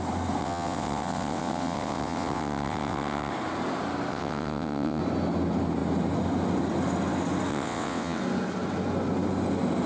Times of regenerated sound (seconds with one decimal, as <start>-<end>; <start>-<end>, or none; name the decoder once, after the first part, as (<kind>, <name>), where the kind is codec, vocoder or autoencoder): 0.4-3.3 (vocoder, WaveNeXt); 4.1-5.0; 7.5-8.2